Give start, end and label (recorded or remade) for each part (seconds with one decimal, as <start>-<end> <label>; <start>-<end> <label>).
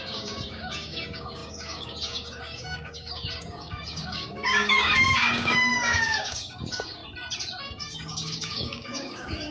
0.0-7.0 remade; 7.0-7.6 recorded; 7.6-9.5 remade